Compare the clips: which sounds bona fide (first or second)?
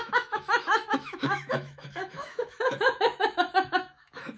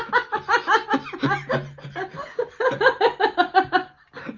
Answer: second